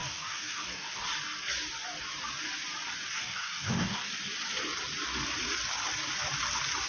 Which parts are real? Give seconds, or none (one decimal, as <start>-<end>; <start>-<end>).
1.0-3.1; 4.1-6.9